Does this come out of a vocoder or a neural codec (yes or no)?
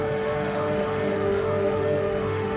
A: yes